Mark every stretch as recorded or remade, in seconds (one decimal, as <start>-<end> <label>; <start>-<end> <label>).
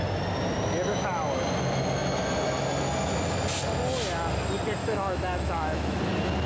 0.0-4.8 recorded; 4.8-6.0 remade; 6.0-6.5 recorded